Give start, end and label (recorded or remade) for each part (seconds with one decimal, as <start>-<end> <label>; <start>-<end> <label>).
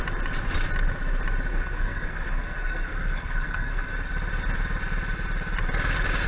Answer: 0.0-1.5 recorded; 1.5-3.9 remade; 3.9-6.3 recorded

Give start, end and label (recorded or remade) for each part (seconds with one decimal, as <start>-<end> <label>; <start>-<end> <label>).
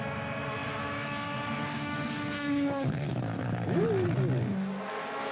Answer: 0.0-0.6 recorded; 0.6-3.8 remade; 3.8-5.3 recorded